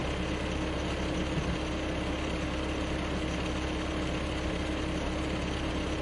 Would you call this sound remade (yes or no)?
no